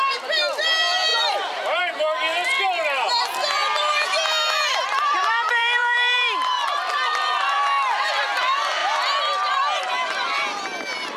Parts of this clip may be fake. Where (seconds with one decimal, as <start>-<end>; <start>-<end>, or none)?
2.3-6.9